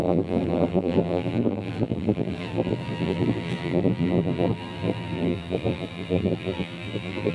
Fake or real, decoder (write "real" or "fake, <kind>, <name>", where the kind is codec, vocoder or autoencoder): fake, vocoder, BigVGAN v2